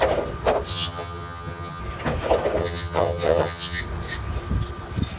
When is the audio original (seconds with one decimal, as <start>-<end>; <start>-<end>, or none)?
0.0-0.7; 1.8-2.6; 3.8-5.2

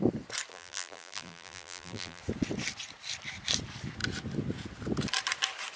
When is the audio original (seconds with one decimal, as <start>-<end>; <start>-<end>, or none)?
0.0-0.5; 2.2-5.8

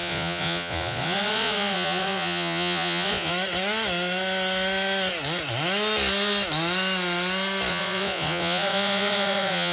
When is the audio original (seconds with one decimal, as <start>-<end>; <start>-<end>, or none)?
3.3-7.7

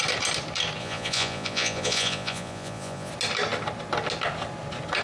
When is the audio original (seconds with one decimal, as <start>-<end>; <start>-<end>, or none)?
0.0-0.8; 3.1-5.0